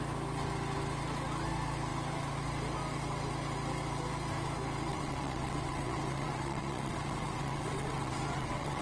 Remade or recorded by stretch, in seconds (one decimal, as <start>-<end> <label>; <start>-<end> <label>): 0.0-4.9 recorded; 4.9-8.8 remade